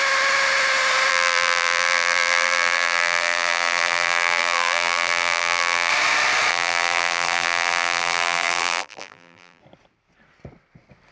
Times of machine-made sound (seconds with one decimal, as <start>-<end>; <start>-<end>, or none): 1.1-5.9; 6.5-9.6